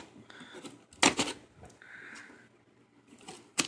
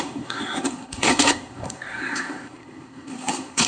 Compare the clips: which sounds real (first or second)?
first